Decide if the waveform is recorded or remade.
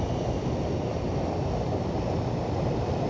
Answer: recorded